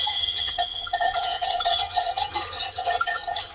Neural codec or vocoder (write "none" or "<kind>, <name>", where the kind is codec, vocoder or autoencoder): vocoder, HiFi-GAN